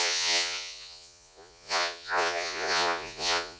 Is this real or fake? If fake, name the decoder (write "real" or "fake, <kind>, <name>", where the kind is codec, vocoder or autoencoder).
fake, vocoder, Vocos